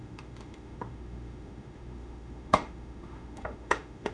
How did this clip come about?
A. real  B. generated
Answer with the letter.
B